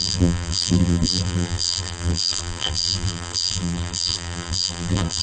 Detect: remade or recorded remade